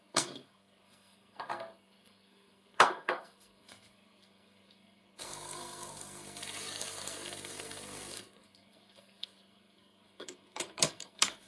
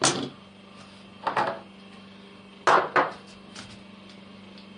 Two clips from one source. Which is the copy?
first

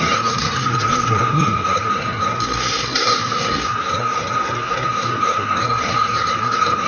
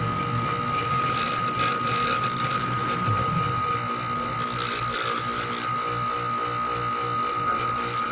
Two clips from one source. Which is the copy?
first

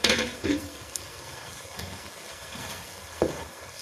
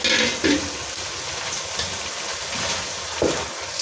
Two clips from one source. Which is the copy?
first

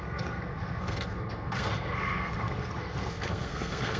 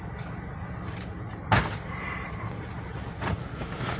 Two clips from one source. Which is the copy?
first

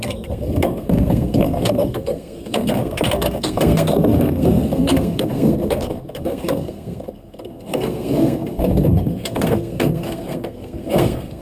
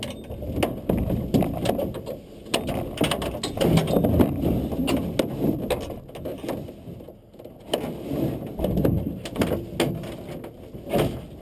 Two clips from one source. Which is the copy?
first